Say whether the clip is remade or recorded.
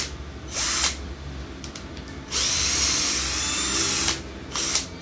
recorded